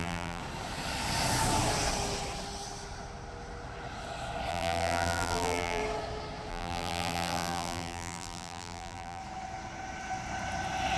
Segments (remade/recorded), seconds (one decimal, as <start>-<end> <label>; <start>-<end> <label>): 0.0-0.4 remade; 0.4-4.5 recorded; 4.5-5.8 remade; 5.8-6.5 recorded; 6.5-9.2 remade; 9.2-11.0 recorded

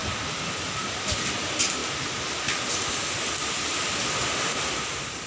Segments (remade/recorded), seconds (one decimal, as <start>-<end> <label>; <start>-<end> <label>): 0.0-5.3 recorded

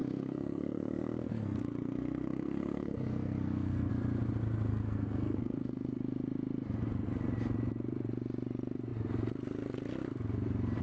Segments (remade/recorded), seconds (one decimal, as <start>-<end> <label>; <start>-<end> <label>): 0.0-3.9 remade; 3.9-4.7 recorded; 4.7-6.0 remade; 6.0-10.8 recorded

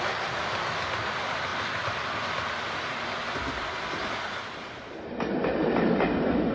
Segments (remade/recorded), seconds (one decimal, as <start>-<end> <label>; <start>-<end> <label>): 0.0-6.5 recorded

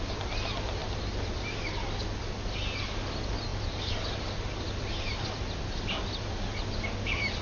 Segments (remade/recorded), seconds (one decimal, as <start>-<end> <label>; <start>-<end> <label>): 0.0-7.4 recorded

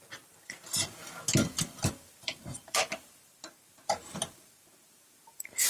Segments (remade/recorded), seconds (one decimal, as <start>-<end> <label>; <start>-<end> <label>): 0.0-1.0 remade; 1.0-1.9 recorded; 1.9-5.7 remade